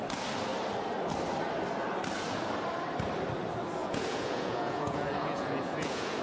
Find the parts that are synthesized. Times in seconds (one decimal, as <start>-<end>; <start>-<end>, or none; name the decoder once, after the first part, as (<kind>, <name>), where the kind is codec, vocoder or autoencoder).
3.8-6.2 (vocoder, Vocos)